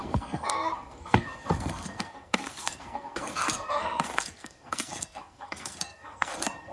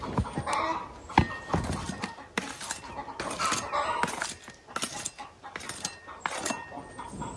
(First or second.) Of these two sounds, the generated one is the first